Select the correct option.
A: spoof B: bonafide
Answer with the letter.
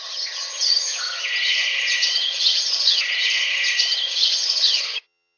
A